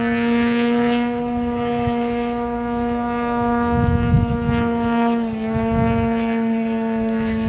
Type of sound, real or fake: fake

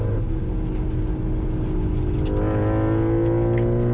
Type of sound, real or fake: real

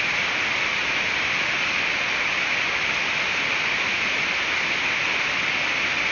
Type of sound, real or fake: real